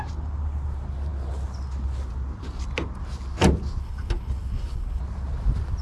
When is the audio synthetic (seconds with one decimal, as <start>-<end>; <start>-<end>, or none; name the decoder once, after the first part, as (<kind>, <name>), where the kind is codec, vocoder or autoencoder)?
3.8-5.0 (codec, HILCodec)